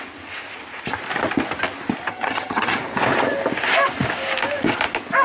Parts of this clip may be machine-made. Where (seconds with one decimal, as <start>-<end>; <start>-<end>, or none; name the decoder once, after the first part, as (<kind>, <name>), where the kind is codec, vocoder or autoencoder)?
2.1-2.8 (vocoder, HiFi-GAN)